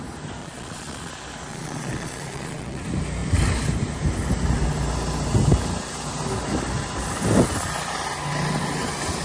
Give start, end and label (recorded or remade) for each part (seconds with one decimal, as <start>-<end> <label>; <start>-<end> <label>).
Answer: 0.0-0.4 recorded; 0.4-1.1 remade; 1.1-1.5 recorded; 1.5-2.8 remade; 2.8-9.2 recorded